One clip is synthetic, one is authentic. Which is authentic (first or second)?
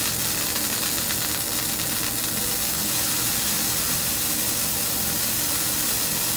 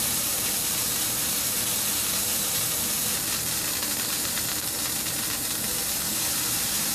first